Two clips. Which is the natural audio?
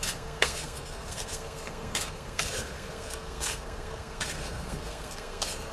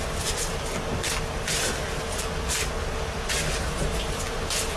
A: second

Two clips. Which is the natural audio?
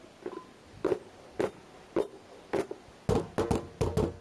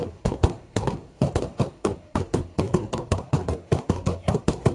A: first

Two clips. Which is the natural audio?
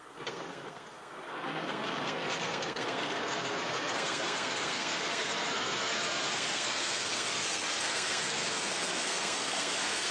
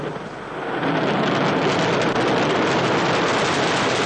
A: second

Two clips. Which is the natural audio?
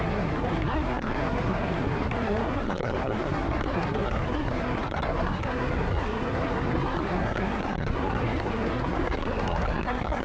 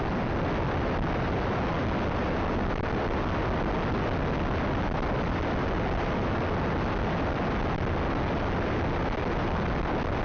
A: second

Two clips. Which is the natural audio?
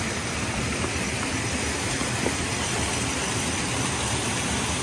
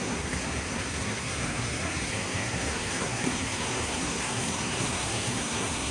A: first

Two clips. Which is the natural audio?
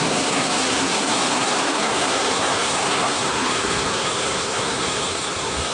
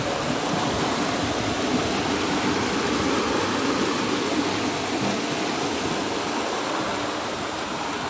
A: second